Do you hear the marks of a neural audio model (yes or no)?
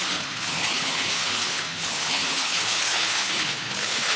yes